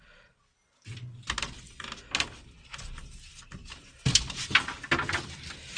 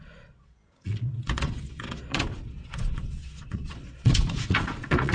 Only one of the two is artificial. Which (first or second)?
second